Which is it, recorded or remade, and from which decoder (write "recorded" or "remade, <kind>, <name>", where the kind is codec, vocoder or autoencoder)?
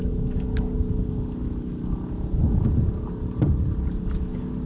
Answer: recorded